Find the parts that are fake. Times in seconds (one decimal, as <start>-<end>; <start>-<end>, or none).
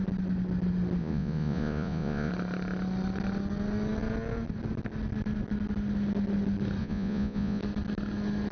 1.0-2.3; 6.8-7.6